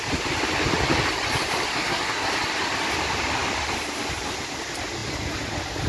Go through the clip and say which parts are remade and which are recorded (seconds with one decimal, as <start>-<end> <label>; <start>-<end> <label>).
0.0-1.7 recorded; 1.7-2.3 remade; 2.3-5.9 recorded